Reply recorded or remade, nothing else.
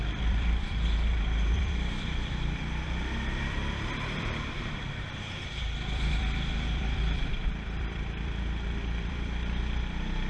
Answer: remade